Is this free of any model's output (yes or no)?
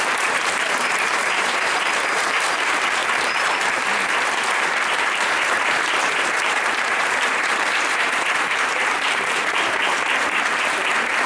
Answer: no